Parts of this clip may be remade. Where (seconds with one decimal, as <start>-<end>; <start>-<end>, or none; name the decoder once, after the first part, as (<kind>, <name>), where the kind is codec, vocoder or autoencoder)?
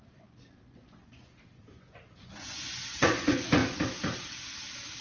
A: 0.0-3.6 (vocoder, Vocos)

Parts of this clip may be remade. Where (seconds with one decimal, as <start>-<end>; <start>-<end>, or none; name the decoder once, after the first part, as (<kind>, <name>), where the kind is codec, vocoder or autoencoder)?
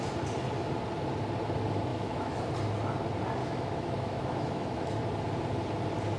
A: 1.9-2.4 (autoencoder, DAC-VAE); 3.4-5.0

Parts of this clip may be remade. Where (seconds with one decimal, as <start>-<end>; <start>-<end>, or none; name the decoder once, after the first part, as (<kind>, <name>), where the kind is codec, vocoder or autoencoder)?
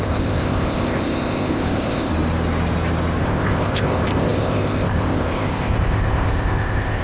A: 0.0-2.1 (codec, ZipCodec); 3.2-7.0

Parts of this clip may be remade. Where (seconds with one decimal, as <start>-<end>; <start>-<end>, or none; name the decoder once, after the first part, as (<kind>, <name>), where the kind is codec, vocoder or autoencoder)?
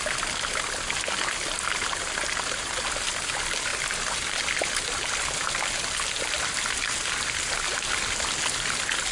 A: 3.7-7.5 (vocoder, BigVGAN v2)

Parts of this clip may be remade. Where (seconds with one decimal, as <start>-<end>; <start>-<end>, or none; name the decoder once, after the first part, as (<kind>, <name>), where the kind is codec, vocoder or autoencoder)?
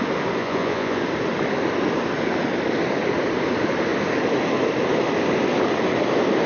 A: 0.4-1.0 (vocoder, Vocos)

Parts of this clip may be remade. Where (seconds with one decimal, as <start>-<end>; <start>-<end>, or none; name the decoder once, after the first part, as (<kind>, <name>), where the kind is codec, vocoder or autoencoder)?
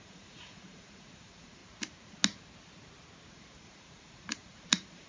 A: 0.0-1.6 (vocoder, Vocos); 3.3-5.1